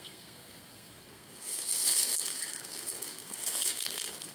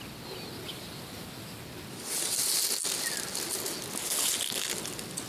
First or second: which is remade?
first